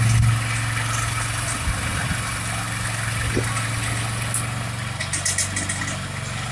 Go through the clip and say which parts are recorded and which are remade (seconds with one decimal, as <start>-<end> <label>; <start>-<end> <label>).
0.0-6.5 recorded